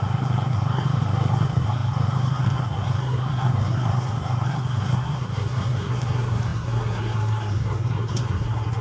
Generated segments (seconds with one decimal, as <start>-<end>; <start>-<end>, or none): 0.0-8.8